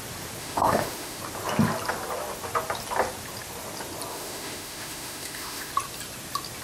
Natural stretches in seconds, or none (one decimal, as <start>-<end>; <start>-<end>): 0.0-0.4; 1.2-4.1; 5.7-6.6